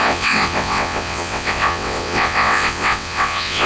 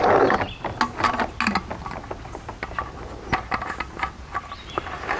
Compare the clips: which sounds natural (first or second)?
second